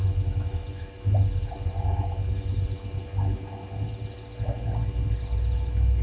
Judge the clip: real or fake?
real